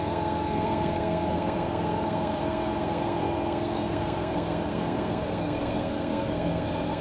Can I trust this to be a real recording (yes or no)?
no